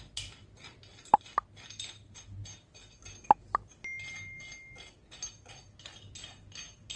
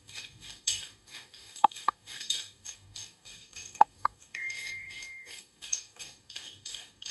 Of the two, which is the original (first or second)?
first